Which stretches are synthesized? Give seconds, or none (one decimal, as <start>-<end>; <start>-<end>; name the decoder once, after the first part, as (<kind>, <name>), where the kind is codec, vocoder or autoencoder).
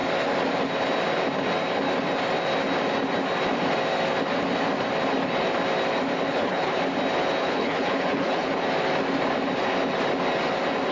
6.3-6.8 (codec, HILCodec); 7.4-8.5